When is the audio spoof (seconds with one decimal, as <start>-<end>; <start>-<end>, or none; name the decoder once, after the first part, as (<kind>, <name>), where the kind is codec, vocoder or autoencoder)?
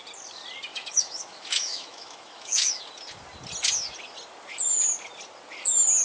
0.7-2.8 (autoencoder, DAC-VAE)